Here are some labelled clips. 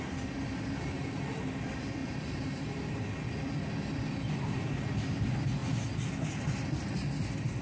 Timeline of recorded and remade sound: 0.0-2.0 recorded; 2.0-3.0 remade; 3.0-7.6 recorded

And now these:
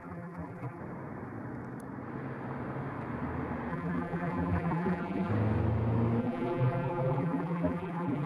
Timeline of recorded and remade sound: 0.0-0.8 remade; 0.8-3.7 recorded; 3.7-5.3 remade; 5.3-6.2 recorded; 6.2-8.3 remade